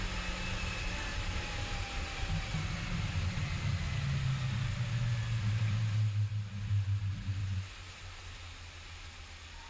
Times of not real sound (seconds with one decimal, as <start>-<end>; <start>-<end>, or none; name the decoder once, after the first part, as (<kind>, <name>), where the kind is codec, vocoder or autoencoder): none